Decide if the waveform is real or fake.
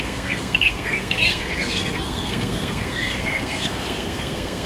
fake